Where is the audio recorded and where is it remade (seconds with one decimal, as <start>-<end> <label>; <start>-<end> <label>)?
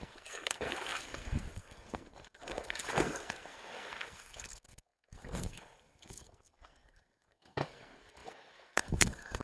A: 0.0-9.4 remade